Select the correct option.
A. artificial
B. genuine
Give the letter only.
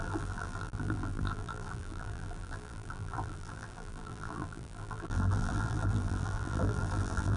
A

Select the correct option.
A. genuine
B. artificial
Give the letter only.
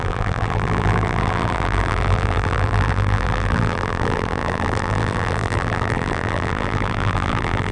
B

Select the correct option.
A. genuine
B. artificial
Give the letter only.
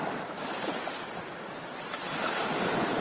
B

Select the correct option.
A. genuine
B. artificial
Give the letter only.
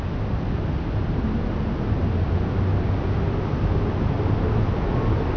A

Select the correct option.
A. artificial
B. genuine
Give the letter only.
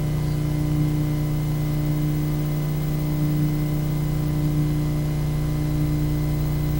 B